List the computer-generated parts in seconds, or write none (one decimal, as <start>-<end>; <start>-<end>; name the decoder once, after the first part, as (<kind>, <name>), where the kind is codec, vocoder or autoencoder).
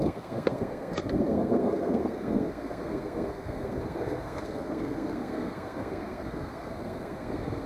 0.0-7.7 (codec, SNAC)